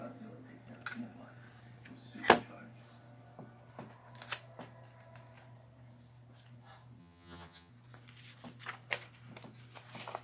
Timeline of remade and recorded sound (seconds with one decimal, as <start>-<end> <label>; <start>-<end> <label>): 0.0-7.0 recorded; 7.0-7.7 remade; 7.7-10.2 recorded